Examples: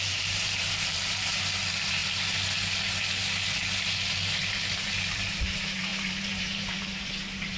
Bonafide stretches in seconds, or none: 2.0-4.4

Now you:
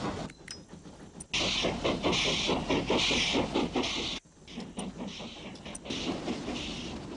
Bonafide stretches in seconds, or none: 0.0-7.2

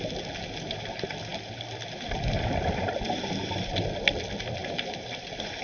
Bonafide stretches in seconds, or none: 0.0-5.6

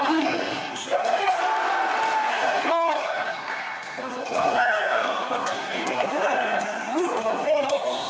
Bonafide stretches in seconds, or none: 1.4-2.3

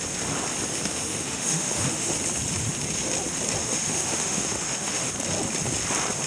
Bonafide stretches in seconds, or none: 0.0-0.9; 2.1-3.6; 5.1-6.3

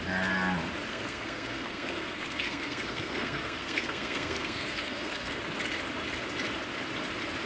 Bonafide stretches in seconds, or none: 0.0-0.9; 5.4-7.5